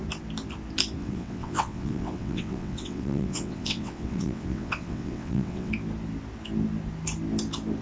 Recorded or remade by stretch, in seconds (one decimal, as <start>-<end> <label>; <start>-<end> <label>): 0.0-1.0 recorded; 1.0-5.7 remade; 5.7-7.8 recorded